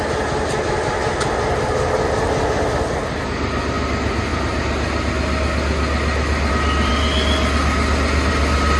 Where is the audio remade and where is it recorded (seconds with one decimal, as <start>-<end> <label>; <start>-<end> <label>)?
0.0-8.8 recorded